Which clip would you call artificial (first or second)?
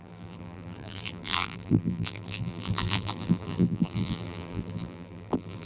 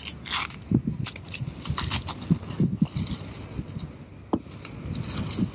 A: first